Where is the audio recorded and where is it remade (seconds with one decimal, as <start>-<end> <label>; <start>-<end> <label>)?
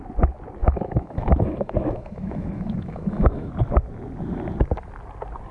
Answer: 0.0-0.6 recorded; 0.6-3.5 remade; 3.5-5.5 recorded